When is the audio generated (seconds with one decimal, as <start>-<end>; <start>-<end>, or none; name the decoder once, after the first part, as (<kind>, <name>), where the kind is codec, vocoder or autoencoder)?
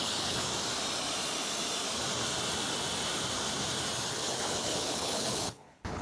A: 0.0-0.5 (codec, HILCodec); 4.1-6.0